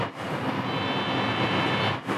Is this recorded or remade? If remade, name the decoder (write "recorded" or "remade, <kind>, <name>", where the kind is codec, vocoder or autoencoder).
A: recorded